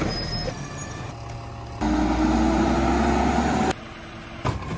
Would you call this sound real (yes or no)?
yes